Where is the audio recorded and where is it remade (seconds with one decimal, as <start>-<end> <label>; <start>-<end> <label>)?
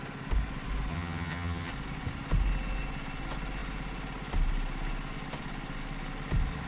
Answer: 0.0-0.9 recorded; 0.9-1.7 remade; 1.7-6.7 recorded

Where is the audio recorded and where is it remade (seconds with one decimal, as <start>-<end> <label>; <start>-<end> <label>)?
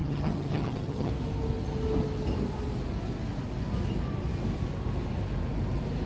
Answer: 0.0-1.1 remade; 1.1-6.1 recorded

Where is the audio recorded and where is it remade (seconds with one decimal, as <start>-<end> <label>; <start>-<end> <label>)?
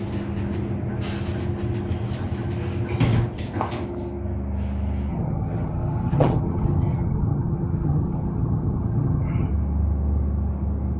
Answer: 0.0-5.1 recorded; 5.1-9.5 remade; 9.5-11.0 recorded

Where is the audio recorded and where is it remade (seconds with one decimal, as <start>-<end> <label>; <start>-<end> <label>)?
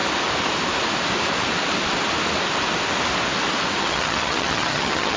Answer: 0.0-3.8 recorded; 3.8-5.2 remade